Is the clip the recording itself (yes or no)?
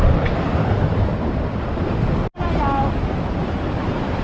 yes